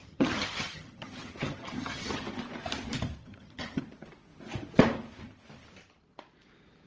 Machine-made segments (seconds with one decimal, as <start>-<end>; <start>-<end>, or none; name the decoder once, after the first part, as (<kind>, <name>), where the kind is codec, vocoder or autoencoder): 0.0-2.4 (vocoder, HiFi-GAN); 3.2-3.8